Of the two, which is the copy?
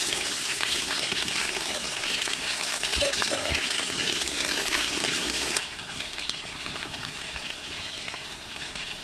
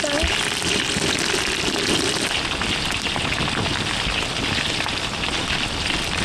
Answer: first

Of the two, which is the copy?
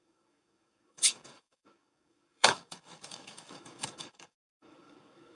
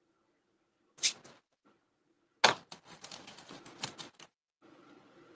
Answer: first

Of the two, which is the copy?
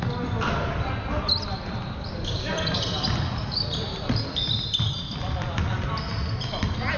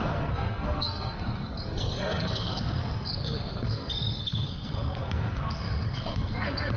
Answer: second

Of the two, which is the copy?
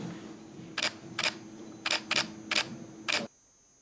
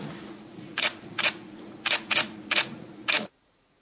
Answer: second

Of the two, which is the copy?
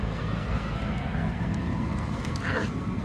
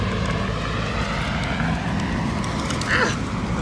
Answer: first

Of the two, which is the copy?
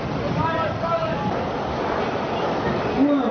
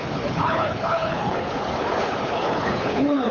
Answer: second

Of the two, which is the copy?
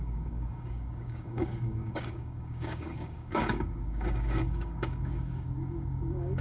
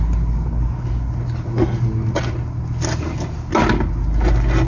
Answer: first